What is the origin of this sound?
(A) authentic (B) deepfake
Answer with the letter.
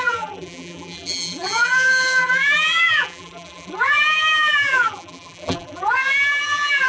B